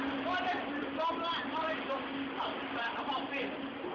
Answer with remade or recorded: recorded